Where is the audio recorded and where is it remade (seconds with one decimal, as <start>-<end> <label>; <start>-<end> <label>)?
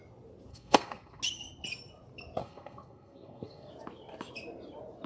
0.0-0.5 recorded; 0.5-1.2 remade; 1.2-2.4 recorded; 2.4-3.7 remade; 3.7-5.1 recorded